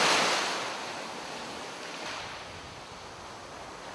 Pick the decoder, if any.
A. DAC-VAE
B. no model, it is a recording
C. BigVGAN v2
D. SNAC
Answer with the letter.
B